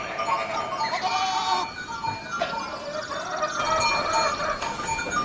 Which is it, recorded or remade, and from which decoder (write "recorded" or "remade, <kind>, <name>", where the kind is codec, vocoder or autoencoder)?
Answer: recorded